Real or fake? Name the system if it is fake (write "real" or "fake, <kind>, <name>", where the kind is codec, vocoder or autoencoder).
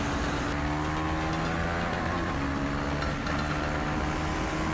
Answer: real